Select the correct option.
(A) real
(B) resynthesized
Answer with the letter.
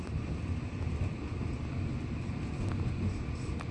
A